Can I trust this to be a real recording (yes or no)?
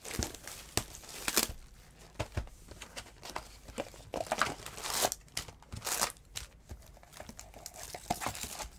yes